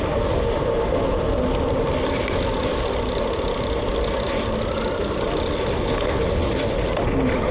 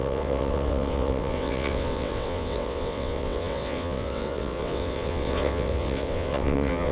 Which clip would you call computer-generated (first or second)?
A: second